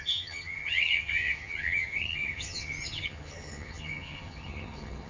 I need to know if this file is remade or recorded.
remade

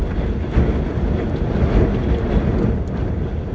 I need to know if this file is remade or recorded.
recorded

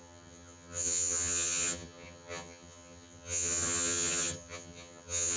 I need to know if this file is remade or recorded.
remade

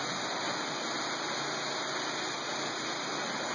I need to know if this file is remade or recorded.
recorded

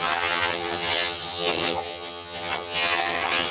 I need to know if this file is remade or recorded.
remade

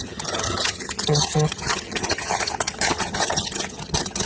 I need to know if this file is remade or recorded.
remade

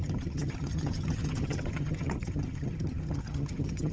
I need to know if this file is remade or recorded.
remade